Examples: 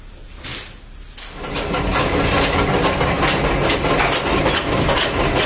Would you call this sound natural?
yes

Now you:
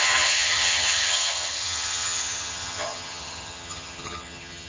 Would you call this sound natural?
no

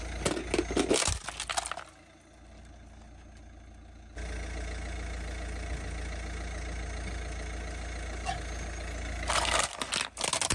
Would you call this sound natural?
yes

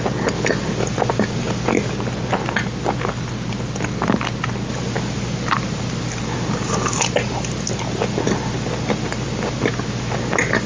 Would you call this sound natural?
yes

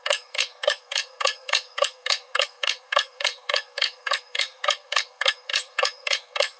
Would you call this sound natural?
no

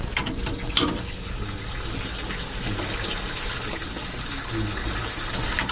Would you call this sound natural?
yes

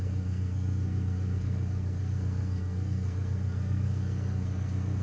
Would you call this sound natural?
no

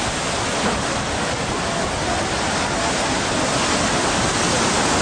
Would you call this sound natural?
yes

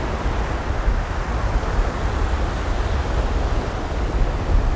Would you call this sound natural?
yes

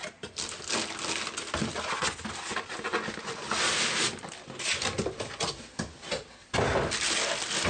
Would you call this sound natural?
yes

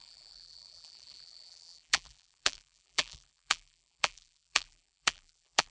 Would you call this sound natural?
no